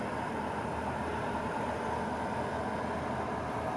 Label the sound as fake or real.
real